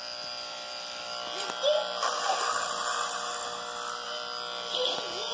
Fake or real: real